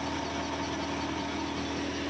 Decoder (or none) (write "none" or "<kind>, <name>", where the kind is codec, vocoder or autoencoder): none